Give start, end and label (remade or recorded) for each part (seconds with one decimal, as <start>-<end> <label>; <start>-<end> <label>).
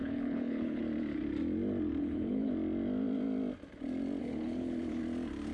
0.0-0.8 remade; 0.8-2.0 recorded; 2.0-2.5 remade; 2.5-4.2 recorded; 4.2-5.0 remade; 5.0-5.5 recorded